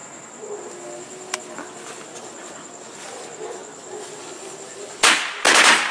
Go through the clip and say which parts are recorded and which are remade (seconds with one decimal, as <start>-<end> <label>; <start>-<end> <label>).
0.0-5.9 recorded